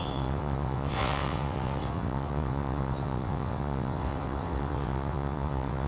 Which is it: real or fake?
fake